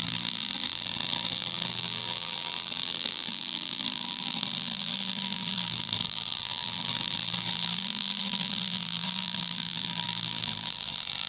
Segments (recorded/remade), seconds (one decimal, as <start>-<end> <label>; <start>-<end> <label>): 0.0-11.3 remade

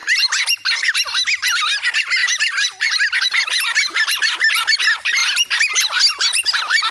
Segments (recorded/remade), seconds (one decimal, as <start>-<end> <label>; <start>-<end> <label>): 0.0-2.2 recorded; 2.2-4.5 remade; 4.5-5.2 recorded; 5.2-5.8 remade; 5.8-6.9 recorded

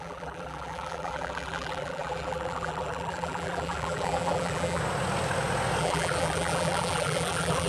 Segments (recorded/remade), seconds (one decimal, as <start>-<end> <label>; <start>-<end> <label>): 0.0-4.8 remade; 4.8-5.8 recorded; 5.8-7.7 remade

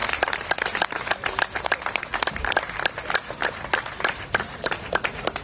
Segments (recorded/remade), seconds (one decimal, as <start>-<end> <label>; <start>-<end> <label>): 0.0-5.4 remade

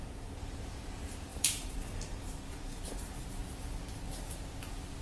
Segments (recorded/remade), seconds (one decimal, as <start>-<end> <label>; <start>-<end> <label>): 0.0-3.4 remade; 3.4-5.0 recorded

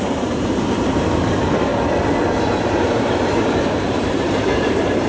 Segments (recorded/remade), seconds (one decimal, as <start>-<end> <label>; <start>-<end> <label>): 0.0-1.7 remade; 1.7-2.6 recorded; 2.6-5.1 remade